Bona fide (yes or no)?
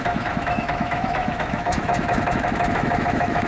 no